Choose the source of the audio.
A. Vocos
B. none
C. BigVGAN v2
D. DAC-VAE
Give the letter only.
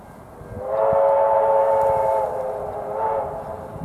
B